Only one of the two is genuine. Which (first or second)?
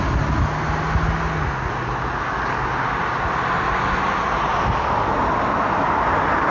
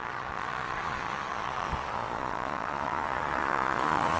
first